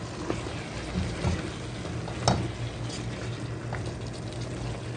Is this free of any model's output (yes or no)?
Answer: yes